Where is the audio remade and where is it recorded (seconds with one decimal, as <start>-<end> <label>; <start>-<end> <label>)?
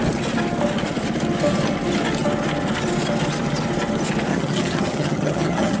0.0-4.3 recorded; 4.3-5.8 remade